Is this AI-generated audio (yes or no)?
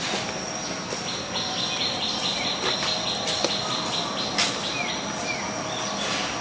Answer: no